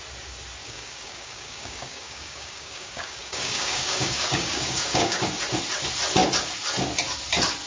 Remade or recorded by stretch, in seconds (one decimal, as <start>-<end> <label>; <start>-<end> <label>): 0.0-0.6 recorded; 0.6-5.2 remade; 5.2-7.7 recorded